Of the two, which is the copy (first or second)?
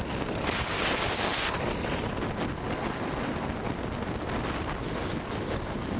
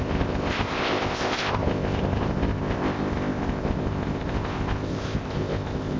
second